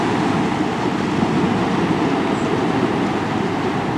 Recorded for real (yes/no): yes